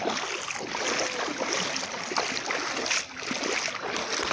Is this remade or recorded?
recorded